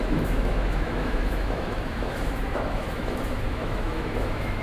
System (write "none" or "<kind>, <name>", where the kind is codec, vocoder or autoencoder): autoencoder, DAC-VAE